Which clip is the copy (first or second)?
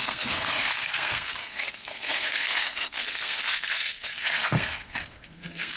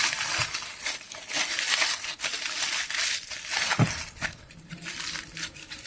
first